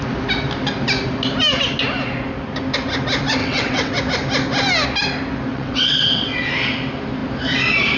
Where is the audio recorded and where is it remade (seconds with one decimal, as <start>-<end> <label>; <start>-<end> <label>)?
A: 0.0-3.4 recorded; 3.4-4.0 remade; 4.0-5.5 recorded; 5.5-6.5 remade; 6.5-8.0 recorded